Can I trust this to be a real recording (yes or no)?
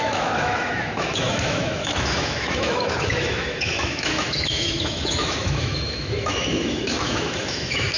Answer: no